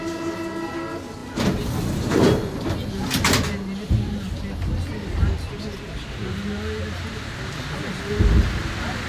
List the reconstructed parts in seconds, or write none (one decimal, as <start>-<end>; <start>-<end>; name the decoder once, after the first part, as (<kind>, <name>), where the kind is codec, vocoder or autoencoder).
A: none

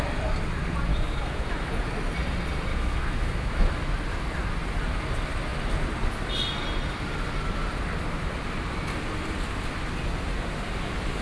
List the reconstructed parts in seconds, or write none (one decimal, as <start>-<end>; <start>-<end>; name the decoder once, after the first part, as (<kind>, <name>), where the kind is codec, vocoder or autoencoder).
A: 0.9-1.7 (autoencoder, DAC-VAE); 2.7-3.7